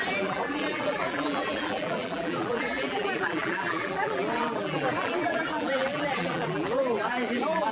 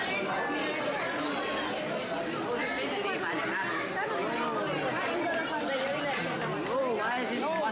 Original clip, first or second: second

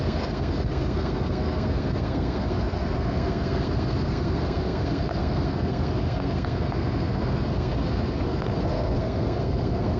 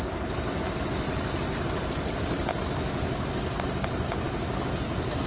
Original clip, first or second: second